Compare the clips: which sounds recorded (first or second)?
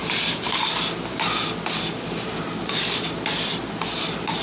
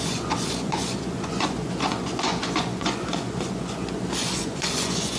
first